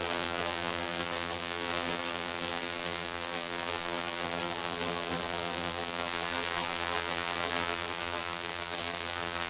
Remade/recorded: remade